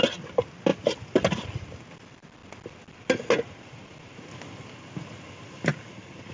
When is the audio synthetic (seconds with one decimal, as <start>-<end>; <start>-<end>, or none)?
none